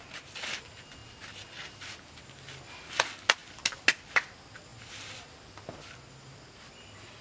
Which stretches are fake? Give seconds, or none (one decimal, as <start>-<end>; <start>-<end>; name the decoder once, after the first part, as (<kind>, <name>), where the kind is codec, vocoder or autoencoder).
none